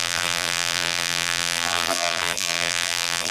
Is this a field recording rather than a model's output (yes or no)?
no